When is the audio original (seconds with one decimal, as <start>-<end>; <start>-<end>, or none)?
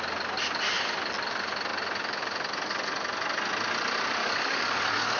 0.0-4.2